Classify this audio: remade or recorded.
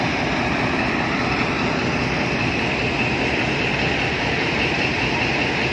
recorded